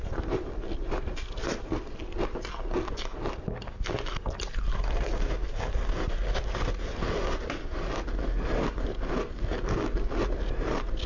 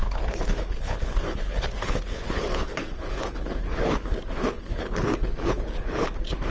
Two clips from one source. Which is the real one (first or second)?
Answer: first